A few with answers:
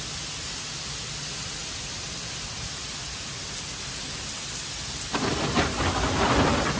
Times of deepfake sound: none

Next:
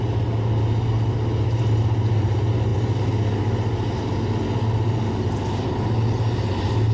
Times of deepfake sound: none